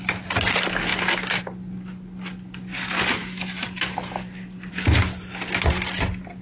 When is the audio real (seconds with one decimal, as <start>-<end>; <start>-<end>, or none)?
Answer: 0.0-6.4